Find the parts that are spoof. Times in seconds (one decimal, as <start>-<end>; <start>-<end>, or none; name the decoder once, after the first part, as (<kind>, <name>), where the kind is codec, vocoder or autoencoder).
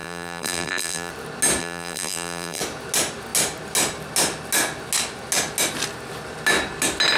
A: 0.0-1.1 (vocoder, BigVGAN v2); 1.6-2.6